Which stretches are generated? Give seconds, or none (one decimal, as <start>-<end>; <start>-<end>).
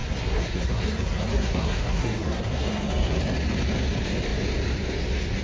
0.0-3.2